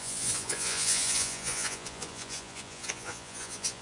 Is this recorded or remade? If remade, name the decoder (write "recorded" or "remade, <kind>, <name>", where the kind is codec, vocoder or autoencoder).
remade, vocoder, Vocos